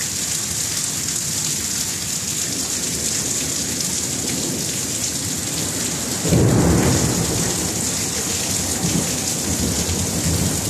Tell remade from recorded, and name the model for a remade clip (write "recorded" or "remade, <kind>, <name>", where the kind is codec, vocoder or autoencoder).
recorded